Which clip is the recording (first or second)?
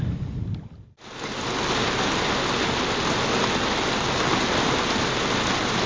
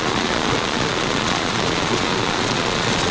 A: first